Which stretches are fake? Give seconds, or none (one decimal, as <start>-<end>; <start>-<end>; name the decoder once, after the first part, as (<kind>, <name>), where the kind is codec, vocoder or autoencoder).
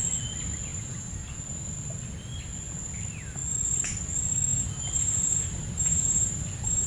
0.7-1.5 (vocoder, BigVGAN v2); 4.5-6.9